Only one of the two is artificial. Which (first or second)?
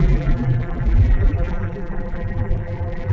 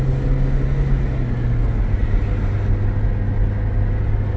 first